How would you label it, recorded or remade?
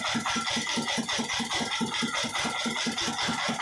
recorded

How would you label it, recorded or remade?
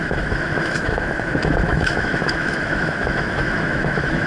remade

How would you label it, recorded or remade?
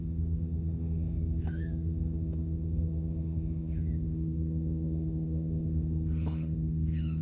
remade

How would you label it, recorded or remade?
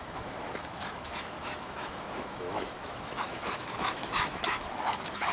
remade